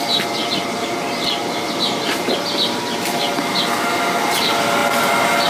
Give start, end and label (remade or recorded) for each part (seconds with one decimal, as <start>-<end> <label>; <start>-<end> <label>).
0.0-0.4 recorded; 0.4-3.5 remade; 3.5-5.5 recorded